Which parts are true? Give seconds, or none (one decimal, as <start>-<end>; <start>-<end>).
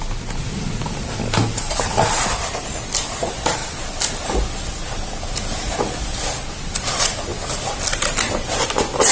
0.0-9.1